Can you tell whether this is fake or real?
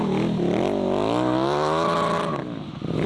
real